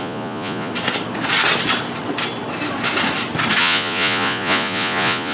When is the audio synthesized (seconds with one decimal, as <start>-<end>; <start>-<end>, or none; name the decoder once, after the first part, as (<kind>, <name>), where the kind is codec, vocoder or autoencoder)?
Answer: 0.0-0.7 (vocoder, Vocos); 3.6-5.3